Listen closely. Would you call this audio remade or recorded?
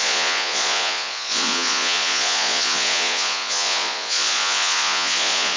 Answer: remade